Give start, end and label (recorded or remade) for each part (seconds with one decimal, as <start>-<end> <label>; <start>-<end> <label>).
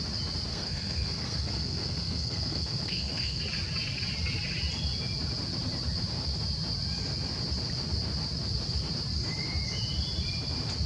0.0-0.5 recorded; 0.5-3.4 remade; 3.4-10.9 recorded